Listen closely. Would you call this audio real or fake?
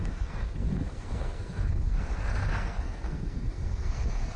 fake